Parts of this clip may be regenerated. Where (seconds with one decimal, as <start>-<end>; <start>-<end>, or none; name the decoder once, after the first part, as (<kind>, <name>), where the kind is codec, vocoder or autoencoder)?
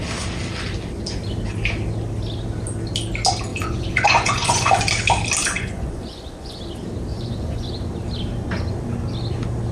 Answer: 3.5-4.7 (vocoder, Vocos); 5.4-6.6; 7.1-7.7